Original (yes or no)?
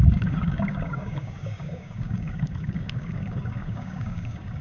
no